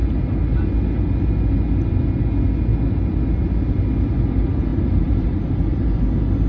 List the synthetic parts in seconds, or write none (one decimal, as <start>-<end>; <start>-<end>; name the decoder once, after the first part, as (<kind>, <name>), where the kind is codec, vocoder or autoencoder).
4.7-5.9 (vocoder, BigVGAN v2)